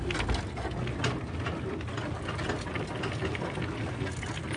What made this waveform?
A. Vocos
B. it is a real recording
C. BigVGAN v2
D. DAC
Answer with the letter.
B